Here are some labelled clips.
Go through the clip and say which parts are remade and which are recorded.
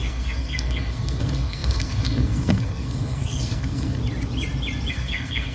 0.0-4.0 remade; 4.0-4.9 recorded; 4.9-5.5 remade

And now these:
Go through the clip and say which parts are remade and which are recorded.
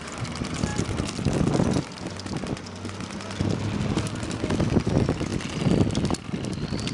0.0-6.9 recorded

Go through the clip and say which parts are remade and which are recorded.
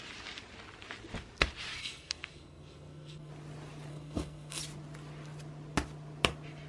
0.0-1.8 recorded; 1.8-3.3 remade; 3.3-3.9 recorded; 3.9-4.6 remade; 4.6-6.7 recorded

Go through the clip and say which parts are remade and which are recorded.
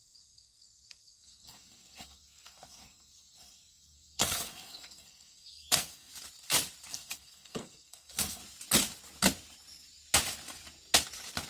0.0-6.1 remade; 6.1-6.9 recorded; 6.9-8.4 remade; 8.4-11.5 recorded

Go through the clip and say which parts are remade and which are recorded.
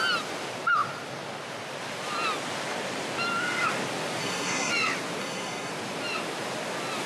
0.0-4.2 recorded; 4.2-4.7 remade; 4.7-5.2 recorded; 5.2-5.7 remade; 5.7-7.1 recorded